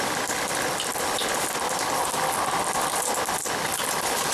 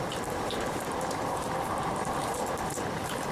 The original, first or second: first